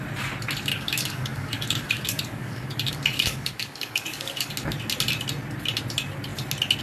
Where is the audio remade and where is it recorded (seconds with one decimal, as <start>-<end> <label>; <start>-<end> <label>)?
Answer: 0.0-0.7 recorded; 0.7-4.5 remade; 4.5-6.8 recorded